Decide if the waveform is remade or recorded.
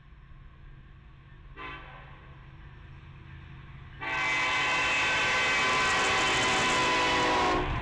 recorded